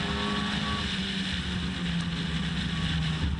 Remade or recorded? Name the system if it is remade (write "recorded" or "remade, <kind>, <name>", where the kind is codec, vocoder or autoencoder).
recorded